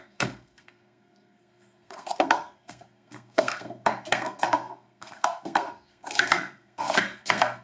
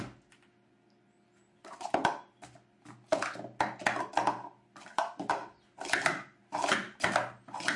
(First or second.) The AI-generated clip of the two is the first